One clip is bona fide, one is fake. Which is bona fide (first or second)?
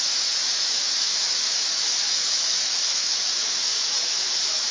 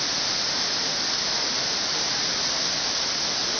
second